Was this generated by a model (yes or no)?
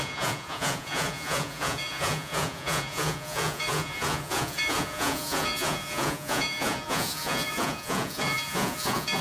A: yes